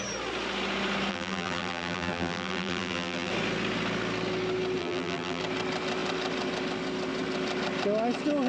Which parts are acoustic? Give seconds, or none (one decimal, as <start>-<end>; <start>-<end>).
0.0-1.1; 3.3-4.8; 5.4-8.5